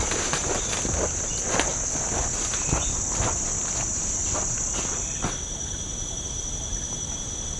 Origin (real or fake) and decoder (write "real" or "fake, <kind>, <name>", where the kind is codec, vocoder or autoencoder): real